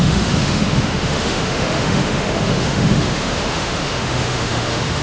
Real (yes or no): no